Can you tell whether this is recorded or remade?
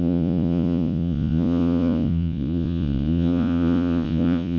remade